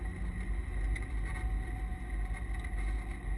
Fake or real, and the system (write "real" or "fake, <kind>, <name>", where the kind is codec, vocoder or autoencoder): real